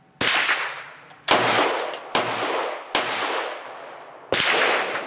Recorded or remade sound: recorded